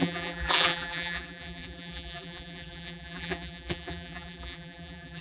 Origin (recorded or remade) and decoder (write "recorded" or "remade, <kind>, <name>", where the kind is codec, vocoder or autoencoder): remade, vocoder, BigVGAN v2